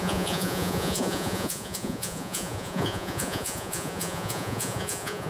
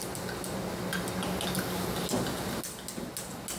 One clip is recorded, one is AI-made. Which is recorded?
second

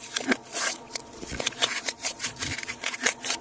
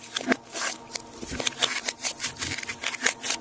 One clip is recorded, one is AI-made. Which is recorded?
second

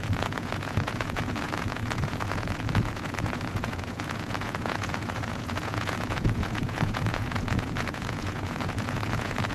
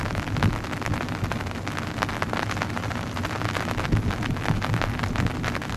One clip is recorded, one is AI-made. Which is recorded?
second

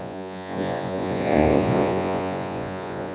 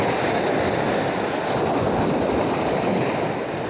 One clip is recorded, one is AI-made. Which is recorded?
second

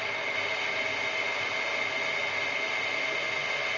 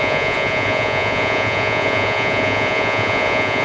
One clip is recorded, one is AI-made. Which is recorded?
first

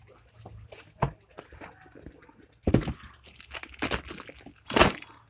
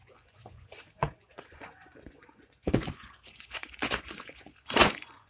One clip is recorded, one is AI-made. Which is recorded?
first